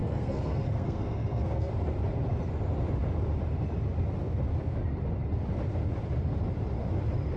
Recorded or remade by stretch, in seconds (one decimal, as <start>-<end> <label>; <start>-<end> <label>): 0.0-1.7 remade; 1.7-7.4 recorded